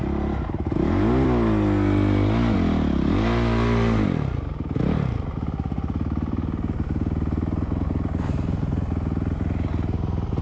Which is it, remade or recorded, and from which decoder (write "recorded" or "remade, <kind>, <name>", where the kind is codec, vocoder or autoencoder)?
recorded